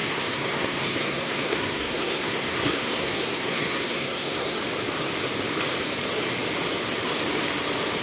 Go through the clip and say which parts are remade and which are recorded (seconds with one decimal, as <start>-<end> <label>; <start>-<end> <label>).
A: 0.0-4.6 remade; 4.6-8.0 recorded